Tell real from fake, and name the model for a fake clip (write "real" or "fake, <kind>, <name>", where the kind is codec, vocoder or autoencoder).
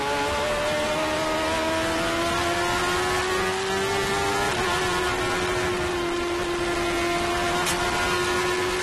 real